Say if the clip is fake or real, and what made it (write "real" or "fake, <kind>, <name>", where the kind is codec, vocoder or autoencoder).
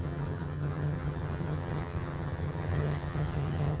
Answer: fake, vocoder, HiFi-GAN